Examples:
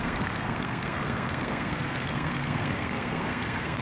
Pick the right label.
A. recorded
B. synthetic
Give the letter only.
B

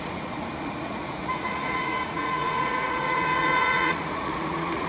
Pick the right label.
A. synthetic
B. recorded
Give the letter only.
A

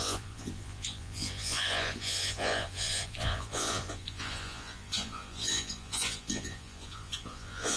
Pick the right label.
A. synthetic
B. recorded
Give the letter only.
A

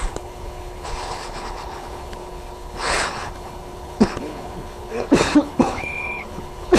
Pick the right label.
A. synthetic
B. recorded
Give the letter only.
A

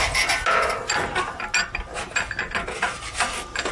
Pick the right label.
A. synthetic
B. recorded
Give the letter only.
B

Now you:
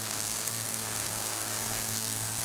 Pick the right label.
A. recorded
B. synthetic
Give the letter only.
B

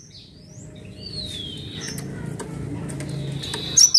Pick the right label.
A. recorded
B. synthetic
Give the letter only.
A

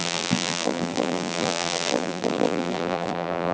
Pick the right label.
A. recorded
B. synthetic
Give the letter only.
B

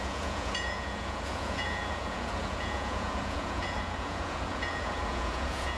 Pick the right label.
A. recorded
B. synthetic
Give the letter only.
B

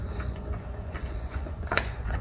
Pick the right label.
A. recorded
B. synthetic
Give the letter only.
B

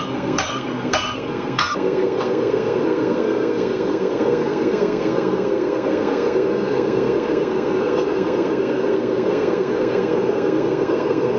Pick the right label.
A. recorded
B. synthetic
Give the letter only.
B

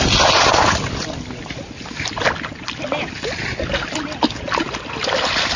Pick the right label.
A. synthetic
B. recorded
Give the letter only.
B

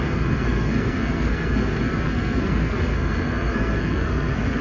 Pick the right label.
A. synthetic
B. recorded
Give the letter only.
A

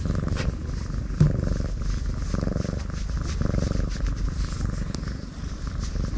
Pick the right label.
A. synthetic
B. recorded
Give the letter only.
A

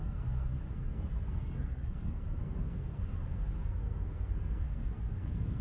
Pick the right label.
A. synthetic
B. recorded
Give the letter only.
A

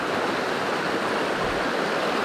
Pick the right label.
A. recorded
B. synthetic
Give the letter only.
A